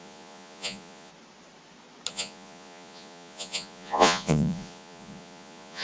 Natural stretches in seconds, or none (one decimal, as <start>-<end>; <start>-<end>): 1.1-2.1